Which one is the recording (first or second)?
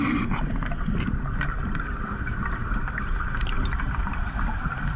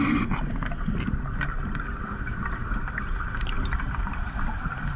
second